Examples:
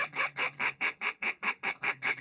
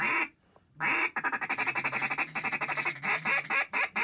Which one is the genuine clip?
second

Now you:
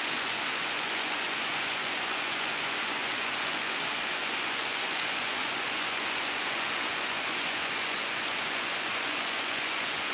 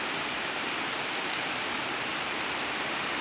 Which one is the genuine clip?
second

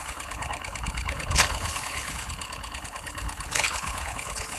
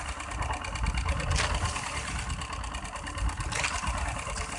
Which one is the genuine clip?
second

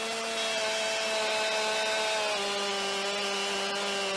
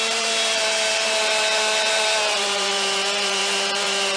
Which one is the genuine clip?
first